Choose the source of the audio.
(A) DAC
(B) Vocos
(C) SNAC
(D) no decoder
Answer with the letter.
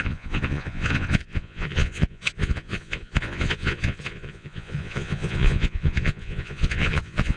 B